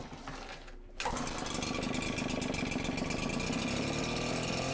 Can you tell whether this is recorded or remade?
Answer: recorded